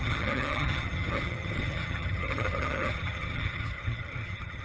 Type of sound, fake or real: fake